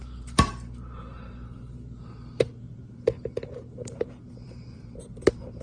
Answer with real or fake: fake